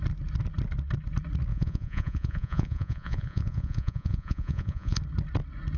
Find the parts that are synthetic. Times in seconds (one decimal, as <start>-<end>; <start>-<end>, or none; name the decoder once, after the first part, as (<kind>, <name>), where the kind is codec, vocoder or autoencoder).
1.5-5.0 (vocoder, Vocos)